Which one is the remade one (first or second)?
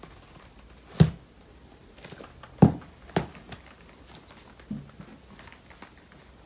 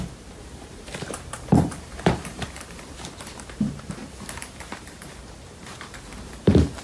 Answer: second